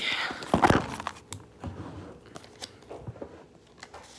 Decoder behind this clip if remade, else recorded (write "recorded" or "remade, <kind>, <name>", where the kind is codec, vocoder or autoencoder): recorded